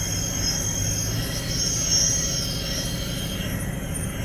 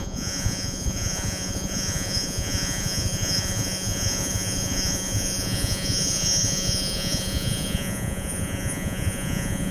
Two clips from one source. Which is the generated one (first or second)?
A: second